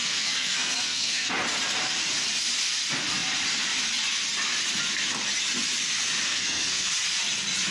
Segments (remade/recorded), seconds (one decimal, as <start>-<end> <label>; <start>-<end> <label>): 0.0-1.3 remade; 1.3-6.3 recorded; 6.3-6.9 remade; 6.9-7.7 recorded